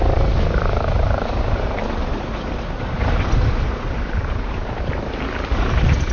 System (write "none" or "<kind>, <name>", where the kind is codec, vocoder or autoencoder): vocoder, BigVGAN v2